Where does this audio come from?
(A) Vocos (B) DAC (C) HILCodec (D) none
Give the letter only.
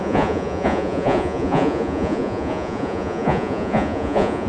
A